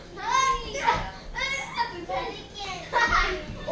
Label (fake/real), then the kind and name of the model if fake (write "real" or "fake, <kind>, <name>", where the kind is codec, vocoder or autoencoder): real